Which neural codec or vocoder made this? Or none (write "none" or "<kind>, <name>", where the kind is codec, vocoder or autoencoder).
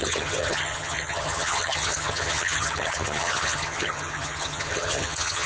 vocoder, HiFi-GAN